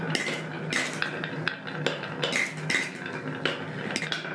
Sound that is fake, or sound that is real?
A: real